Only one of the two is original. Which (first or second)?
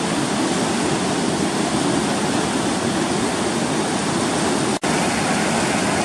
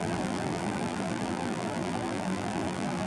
first